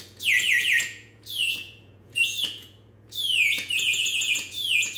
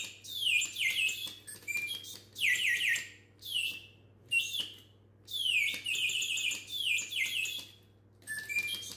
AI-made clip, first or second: first